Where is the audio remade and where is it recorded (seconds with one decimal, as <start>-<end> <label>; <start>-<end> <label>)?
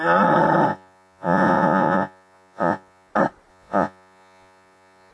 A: 0.0-0.7 recorded; 0.7-3.1 remade; 3.1-3.5 recorded; 3.5-5.1 remade